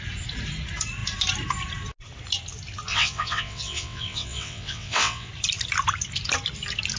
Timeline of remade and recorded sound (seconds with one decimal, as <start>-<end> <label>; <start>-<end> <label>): 0.0-2.9 recorded; 2.9-5.3 remade; 5.3-7.0 recorded